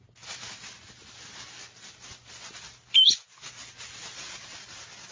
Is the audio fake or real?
real